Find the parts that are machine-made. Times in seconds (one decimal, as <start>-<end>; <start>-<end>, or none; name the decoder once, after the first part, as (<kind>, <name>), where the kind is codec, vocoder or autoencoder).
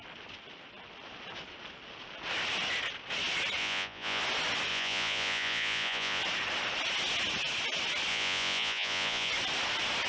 3.6-4.2 (vocoder, Vocos); 4.7-6.2; 8.1-9.3